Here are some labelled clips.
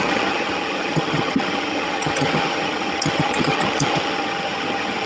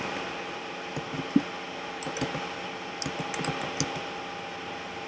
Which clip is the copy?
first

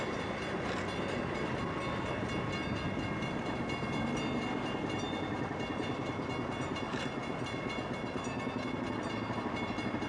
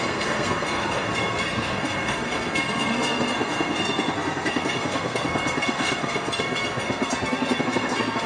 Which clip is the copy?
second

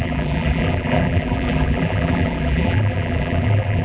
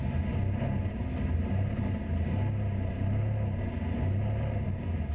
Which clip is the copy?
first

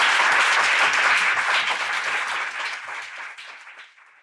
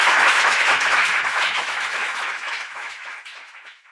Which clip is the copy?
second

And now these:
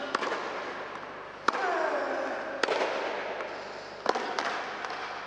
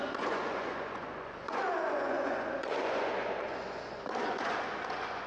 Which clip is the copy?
second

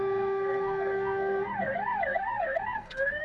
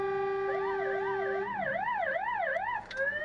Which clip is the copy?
first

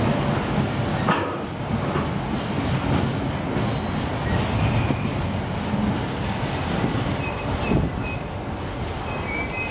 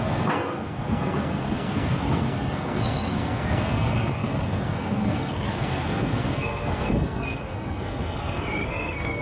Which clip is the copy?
second